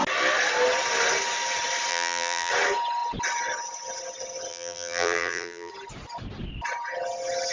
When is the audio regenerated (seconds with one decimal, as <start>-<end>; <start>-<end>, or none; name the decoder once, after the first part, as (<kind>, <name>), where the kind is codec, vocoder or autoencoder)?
1.9-2.5 (vocoder, BigVGAN v2); 4.5-5.7